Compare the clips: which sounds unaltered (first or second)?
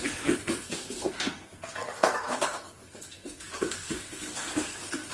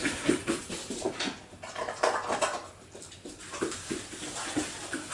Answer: second